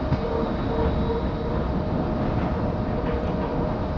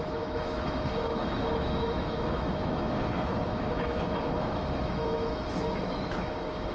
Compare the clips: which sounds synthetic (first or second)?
second